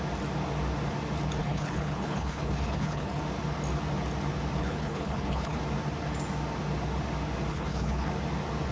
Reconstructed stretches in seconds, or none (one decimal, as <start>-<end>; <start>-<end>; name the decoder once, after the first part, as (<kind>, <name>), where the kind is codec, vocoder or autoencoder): 1.4-3.2 (codec, HILCodec); 4.6-5.6; 7.5-8.1

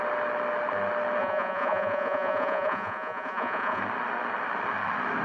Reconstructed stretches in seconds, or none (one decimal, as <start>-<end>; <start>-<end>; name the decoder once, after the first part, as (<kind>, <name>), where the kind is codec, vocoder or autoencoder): 1.2-3.8 (vocoder, Vocos)

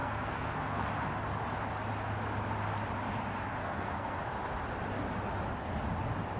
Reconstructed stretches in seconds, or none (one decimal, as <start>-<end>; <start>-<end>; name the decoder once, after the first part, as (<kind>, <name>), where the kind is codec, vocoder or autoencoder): 0.0-0.9 (codec, SNAC); 3.6-4.2

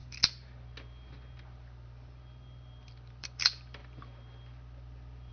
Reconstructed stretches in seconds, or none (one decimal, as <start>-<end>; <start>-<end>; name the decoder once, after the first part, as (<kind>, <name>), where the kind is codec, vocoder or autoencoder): 3.2-3.8 (vocoder, BigVGAN v2)

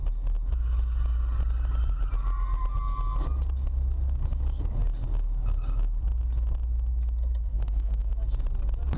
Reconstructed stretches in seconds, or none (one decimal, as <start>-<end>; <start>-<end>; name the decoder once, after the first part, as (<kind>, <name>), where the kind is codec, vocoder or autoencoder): 7.5-8.1 (codec, SNAC)

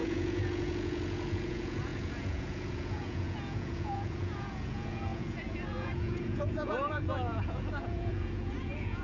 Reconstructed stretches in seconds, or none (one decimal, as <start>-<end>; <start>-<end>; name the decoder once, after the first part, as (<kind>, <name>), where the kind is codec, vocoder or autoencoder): 0.0-9.0 (vocoder, Vocos)

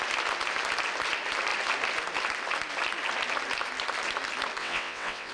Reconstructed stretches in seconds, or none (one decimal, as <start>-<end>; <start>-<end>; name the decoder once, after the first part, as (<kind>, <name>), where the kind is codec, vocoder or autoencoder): 4.6-5.3 (vocoder, WaveNeXt)

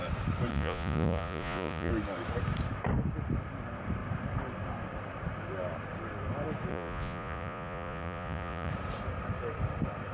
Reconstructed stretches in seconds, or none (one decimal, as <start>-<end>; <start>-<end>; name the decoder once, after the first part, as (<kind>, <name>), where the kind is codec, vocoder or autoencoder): 0.5-1.9 (vocoder, Vocos); 6.7-8.7